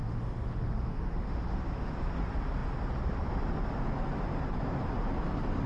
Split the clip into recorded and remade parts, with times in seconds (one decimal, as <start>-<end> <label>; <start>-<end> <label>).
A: 0.0-2.1 remade; 2.1-5.7 recorded